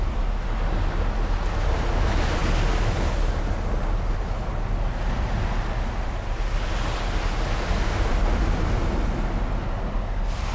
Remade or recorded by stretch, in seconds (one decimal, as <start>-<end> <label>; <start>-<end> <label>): 0.0-10.5 recorded

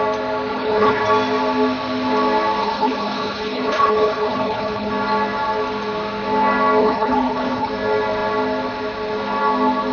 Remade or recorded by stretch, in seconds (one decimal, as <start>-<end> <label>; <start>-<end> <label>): 0.0-0.5 recorded; 0.5-1.0 remade; 1.0-2.6 recorded; 2.6-4.9 remade; 4.9-6.8 recorded; 6.8-7.7 remade; 7.7-9.9 recorded

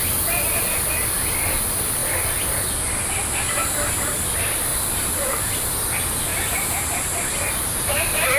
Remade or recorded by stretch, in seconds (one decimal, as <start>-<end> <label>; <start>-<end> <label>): 0.0-4.7 recorded; 4.7-5.5 remade; 5.5-6.3 recorded; 6.3-7.3 remade; 7.3-8.4 recorded

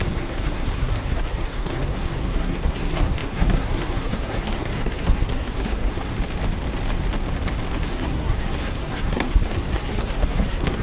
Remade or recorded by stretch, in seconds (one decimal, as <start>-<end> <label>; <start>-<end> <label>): 0.0-6.1 remade; 6.1-7.8 recorded; 7.8-10.8 remade